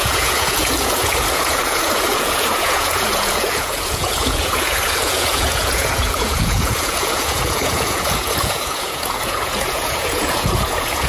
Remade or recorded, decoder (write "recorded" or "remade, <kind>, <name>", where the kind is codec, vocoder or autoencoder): remade, vocoder, Vocos